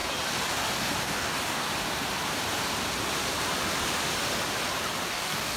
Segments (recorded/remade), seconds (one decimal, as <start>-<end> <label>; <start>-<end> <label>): 0.0-1.0 recorded; 1.0-1.7 remade; 1.7-5.1 recorded; 5.1-5.6 remade